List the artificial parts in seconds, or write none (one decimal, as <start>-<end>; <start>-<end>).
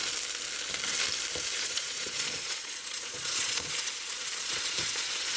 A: 1.6-5.4